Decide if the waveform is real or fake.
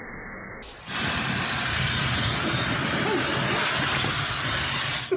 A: real